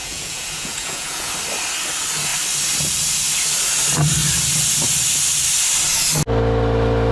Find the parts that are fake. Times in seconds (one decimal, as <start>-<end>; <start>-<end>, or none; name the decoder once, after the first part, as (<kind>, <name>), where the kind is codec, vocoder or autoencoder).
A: 0.0-1.3 (vocoder, Vocos)